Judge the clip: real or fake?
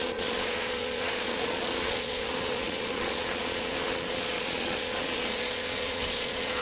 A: fake